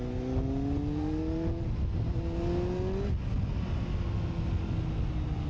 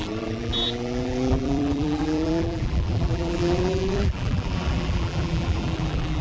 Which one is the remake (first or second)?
second